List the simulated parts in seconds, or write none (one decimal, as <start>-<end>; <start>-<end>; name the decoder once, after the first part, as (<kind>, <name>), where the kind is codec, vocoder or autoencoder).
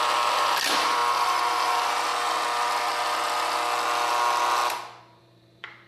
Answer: 0.0-2.1 (vocoder, BigVGAN v2); 5.0-5.9